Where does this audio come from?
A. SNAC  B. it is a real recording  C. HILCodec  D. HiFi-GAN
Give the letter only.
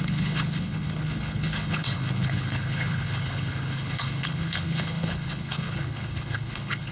C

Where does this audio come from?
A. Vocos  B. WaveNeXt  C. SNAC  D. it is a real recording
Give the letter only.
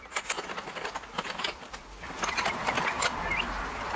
D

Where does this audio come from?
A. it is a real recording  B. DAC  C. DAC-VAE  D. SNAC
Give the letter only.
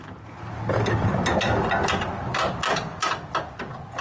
A